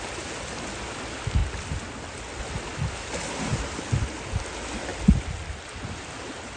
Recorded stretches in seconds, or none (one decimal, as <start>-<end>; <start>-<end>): 0.0-6.6